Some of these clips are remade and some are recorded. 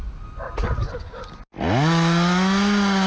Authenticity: recorded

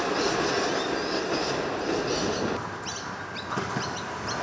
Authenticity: recorded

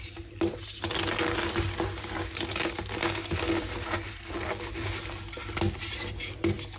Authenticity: recorded